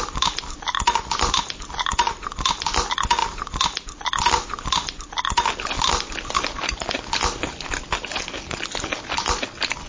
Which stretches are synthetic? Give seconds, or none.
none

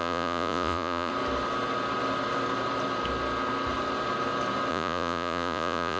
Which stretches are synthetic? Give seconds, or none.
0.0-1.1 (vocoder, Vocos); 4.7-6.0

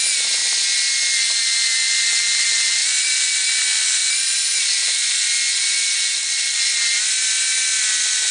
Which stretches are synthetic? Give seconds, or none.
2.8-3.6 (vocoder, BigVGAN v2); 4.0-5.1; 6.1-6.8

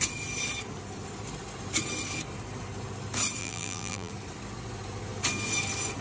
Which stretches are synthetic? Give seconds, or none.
3.4-4.1 (vocoder, BigVGAN v2)

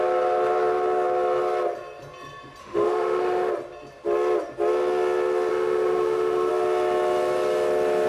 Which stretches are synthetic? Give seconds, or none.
2.6-3.5 (autoencoder, DAC-VAE); 5.5-6.5

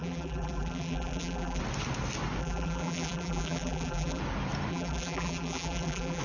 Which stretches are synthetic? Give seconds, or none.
0.0-1.6 (vocoder, BigVGAN v2); 2.4-4.2; 4.7-6.2

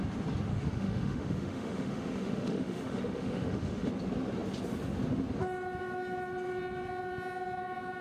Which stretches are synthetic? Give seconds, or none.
0.5-3.9 (autoencoder, DAC-VAE)